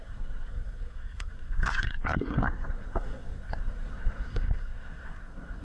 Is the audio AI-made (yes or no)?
yes